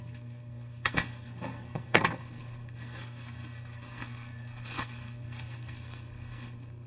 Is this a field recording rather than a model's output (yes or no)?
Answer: no